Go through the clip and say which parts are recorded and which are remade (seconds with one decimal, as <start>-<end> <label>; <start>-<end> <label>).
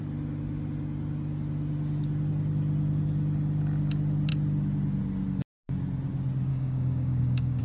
0.0-6.5 recorded; 6.5-7.6 remade